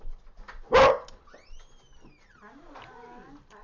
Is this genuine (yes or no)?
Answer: yes